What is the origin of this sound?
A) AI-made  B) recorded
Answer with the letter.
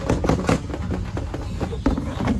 B